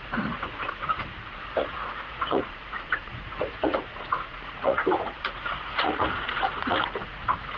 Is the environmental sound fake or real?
fake